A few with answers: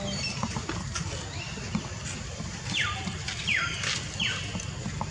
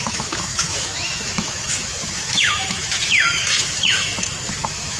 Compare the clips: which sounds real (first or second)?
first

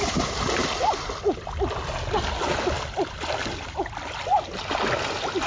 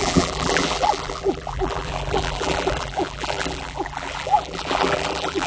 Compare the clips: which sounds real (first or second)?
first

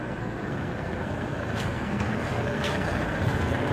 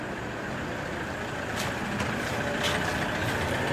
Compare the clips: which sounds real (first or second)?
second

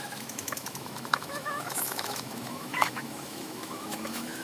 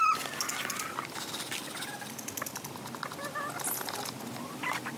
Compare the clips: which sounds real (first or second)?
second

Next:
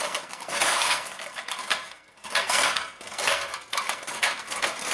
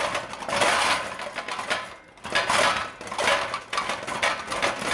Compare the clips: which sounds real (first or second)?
second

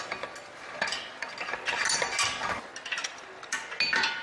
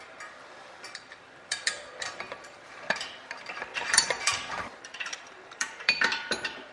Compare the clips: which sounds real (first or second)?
first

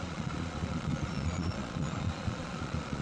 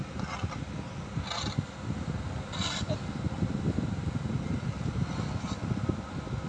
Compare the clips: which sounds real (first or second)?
second